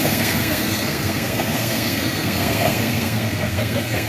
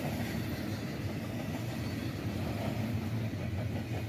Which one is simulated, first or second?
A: first